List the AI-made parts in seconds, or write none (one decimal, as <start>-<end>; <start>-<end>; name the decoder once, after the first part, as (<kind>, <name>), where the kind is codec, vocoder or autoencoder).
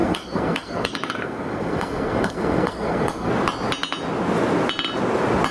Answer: 0.0-3.3 (codec, SNAC)